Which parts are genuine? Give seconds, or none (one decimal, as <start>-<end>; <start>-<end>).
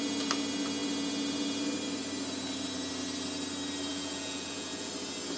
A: 0.0-3.9; 4.9-5.4